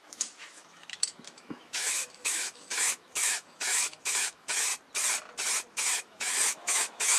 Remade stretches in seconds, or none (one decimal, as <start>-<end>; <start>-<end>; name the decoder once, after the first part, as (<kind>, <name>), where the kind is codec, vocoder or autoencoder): 0.0-4.7 (autoencoder, DAC-VAE); 5.7-7.2